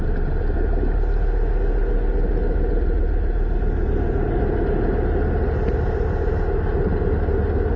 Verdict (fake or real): real